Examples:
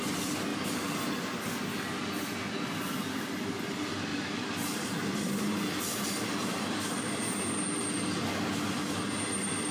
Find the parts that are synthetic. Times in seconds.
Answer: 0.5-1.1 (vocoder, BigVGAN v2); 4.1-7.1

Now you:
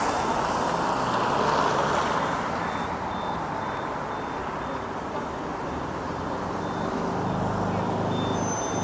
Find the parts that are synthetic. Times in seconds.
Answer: 5.5-6.6 (vocoder, BigVGAN v2)